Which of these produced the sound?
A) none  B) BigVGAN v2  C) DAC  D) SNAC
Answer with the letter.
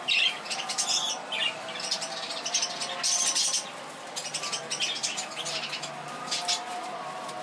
A